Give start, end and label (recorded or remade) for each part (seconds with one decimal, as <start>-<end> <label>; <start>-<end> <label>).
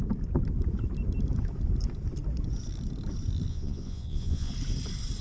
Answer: 0.0-3.5 recorded; 3.5-4.5 remade; 4.5-5.2 recorded